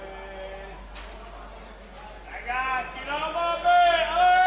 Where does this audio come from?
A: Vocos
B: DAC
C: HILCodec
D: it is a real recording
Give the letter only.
D